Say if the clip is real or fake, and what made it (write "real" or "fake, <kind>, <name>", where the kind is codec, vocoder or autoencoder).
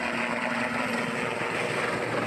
real